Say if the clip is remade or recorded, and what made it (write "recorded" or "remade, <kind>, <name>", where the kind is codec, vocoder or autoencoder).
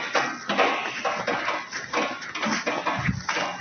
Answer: recorded